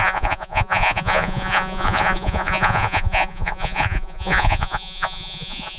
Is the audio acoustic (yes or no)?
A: no